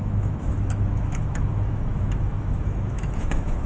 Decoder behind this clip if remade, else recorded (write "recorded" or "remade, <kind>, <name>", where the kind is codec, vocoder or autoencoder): remade, autoencoder, DAC-VAE